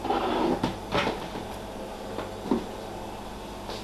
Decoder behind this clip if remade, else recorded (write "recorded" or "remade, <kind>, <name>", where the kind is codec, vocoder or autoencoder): recorded